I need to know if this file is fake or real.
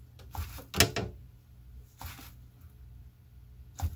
real